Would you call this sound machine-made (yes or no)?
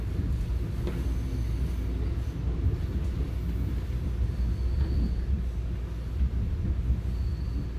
no